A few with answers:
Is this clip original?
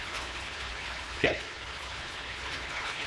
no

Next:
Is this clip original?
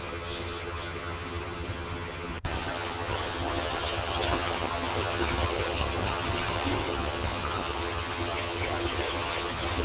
no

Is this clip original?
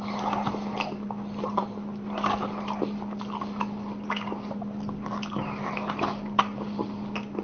yes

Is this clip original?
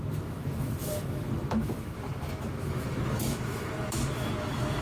no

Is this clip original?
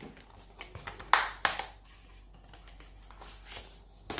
yes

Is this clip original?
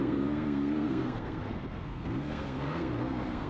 no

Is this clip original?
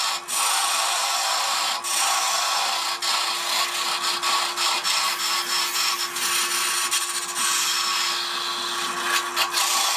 yes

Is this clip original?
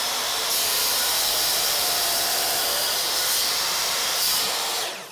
no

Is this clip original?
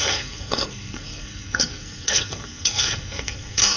no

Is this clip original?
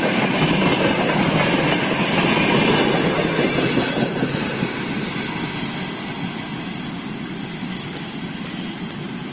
yes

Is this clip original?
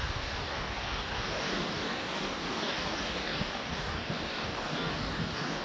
no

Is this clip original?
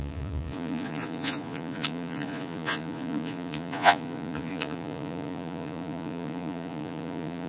no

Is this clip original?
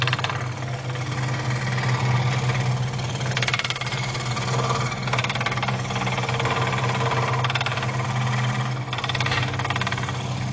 yes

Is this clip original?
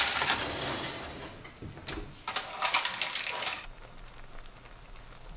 yes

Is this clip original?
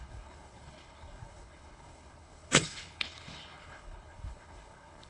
no